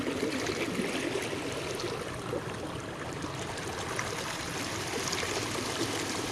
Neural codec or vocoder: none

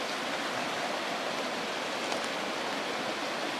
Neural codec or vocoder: none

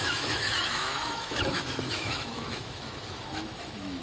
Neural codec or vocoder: autoencoder, DAC-VAE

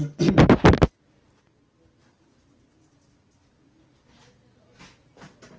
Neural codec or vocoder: none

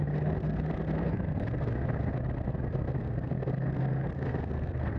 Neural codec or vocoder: codec, SNAC